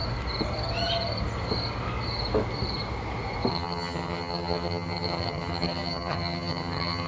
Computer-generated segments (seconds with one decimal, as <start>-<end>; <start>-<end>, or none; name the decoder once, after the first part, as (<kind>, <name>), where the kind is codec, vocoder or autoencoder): 3.5-7.1 (vocoder, HiFi-GAN)